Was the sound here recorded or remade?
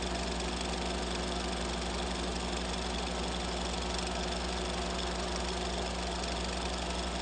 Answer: recorded